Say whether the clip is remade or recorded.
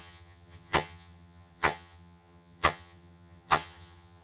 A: remade